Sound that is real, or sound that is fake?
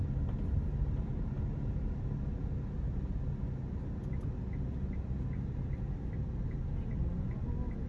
real